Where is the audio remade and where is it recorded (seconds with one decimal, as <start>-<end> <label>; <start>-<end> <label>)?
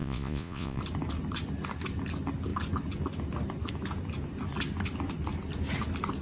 0.0-0.8 remade; 0.8-6.2 recorded